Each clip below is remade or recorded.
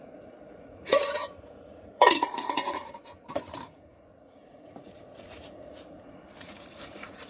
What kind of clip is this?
remade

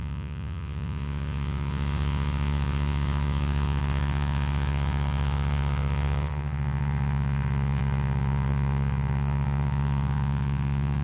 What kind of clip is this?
remade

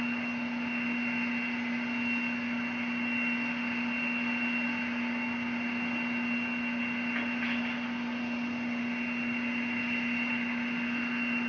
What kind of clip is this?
recorded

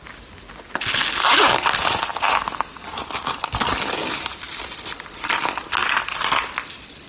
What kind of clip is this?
recorded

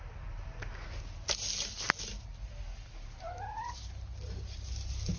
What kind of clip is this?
recorded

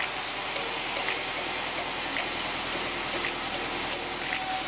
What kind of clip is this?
recorded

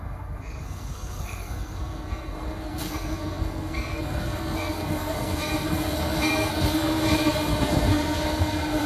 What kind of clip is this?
remade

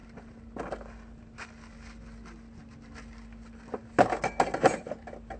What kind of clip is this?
recorded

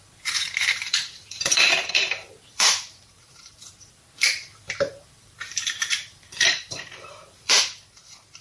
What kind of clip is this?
remade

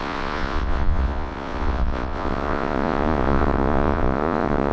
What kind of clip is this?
remade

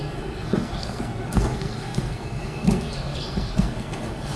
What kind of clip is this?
remade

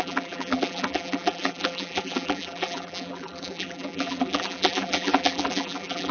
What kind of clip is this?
remade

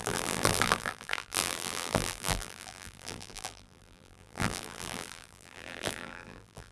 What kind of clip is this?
remade